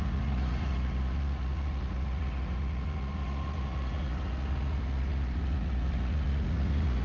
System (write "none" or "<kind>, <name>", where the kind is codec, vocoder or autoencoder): vocoder, Vocos